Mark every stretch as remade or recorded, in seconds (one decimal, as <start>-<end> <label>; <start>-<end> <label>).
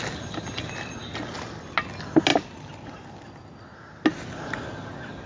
0.0-5.3 recorded